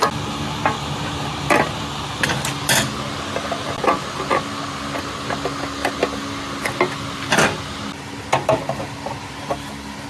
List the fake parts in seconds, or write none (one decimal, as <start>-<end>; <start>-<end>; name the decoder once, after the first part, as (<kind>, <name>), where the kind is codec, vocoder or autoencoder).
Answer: none